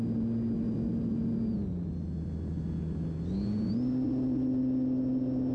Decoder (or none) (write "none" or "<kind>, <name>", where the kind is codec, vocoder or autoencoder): none